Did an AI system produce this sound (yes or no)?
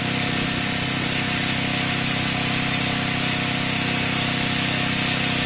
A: no